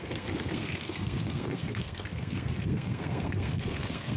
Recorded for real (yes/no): no